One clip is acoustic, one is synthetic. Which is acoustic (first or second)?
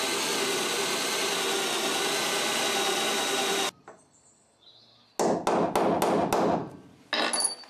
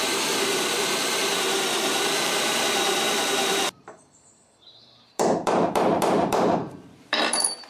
first